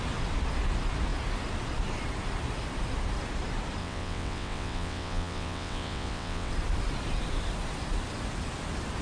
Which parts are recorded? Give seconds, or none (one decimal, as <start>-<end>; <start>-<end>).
0.0-3.8; 6.5-9.0